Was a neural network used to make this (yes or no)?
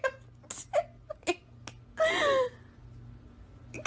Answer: no